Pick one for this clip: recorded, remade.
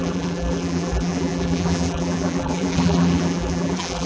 remade